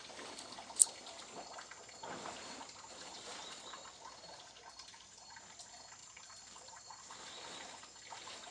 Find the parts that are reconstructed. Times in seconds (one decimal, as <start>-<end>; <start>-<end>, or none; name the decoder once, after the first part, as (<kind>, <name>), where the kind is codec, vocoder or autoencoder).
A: 6.0-7.1 (vocoder, BigVGAN v2)